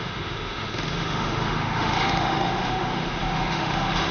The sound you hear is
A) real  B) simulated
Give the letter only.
B